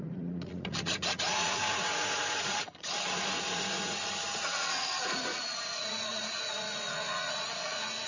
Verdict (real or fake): fake